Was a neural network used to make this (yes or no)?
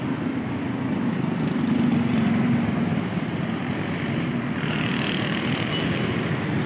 no